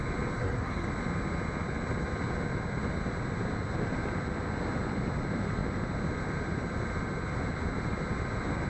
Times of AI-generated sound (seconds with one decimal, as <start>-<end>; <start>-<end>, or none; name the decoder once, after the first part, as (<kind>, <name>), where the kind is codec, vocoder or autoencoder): 0.4-0.9 (codec, SNAC)